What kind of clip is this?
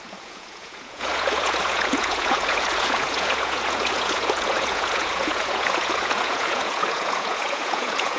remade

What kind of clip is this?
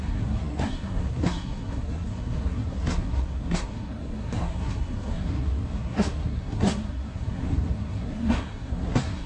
remade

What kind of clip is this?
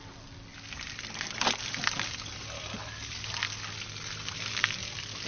recorded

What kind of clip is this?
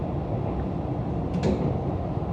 recorded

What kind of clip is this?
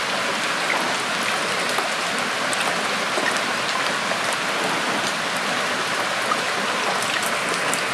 recorded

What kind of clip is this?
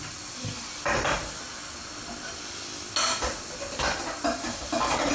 recorded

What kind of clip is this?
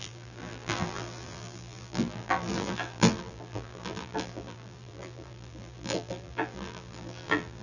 remade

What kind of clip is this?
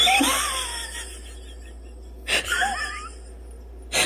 recorded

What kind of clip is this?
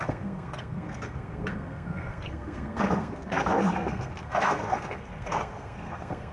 remade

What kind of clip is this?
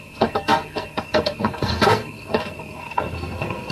remade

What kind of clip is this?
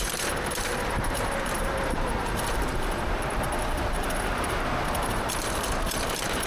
remade